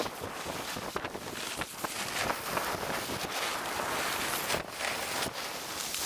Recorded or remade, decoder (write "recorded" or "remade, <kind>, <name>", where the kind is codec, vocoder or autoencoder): recorded